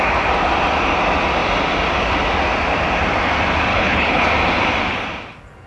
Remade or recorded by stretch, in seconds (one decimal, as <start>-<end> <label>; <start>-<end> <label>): 0.0-3.7 recorded; 3.7-4.3 remade; 4.3-5.7 recorded

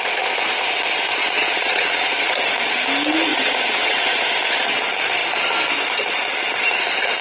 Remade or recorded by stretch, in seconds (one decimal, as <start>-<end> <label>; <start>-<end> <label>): 0.0-1.2 recorded; 1.2-2.3 remade; 2.3-3.3 recorded; 3.3-4.2 remade; 4.2-7.2 recorded

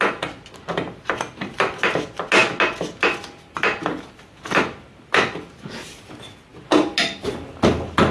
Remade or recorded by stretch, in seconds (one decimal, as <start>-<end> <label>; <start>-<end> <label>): 0.0-8.1 recorded